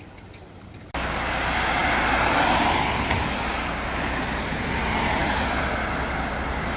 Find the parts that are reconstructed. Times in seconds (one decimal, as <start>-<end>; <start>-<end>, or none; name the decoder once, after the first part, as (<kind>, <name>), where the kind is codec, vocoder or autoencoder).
none